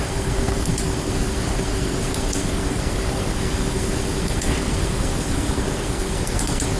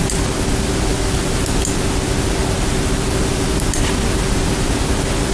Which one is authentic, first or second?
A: second